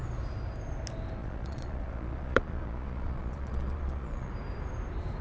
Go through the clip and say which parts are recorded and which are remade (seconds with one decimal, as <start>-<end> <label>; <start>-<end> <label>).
0.0-1.2 recorded; 1.2-4.3 remade; 4.3-5.2 recorded